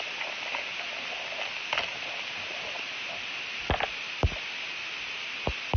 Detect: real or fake real